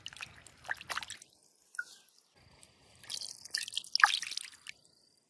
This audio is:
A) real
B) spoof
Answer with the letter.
A